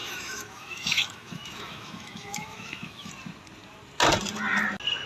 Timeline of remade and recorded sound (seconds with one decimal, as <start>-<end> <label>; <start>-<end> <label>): 0.0-3.1 remade; 3.1-5.1 recorded